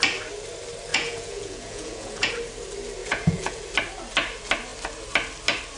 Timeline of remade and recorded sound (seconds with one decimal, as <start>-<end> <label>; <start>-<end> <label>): 0.0-0.9 recorded; 0.9-2.3 remade; 2.3-3.0 recorded; 3.0-3.6 remade; 3.6-5.8 recorded